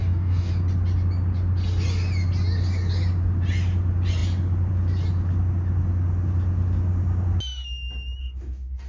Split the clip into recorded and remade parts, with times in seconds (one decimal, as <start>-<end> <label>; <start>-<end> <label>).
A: 0.0-0.5 remade; 0.5-8.2 recorded; 8.2-8.9 remade